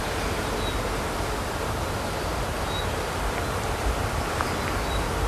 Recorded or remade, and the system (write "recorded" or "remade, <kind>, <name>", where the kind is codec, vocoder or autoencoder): recorded